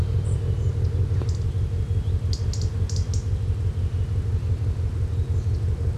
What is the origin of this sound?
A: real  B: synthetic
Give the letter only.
A